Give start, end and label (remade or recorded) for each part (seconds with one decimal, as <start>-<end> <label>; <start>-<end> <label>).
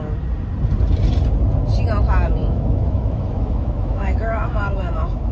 0.0-2.4 recorded; 2.4-5.3 remade